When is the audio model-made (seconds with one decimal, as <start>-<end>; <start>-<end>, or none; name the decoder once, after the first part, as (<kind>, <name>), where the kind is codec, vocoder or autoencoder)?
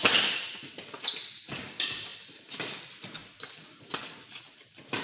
2.1-2.7 (vocoder, BigVGAN v2); 3.2-4.6